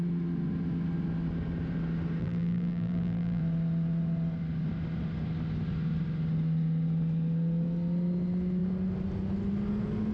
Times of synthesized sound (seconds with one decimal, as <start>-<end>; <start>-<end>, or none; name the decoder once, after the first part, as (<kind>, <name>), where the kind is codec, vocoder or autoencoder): 2.2-3.4 (vocoder, BigVGAN v2)